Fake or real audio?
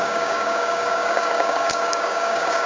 fake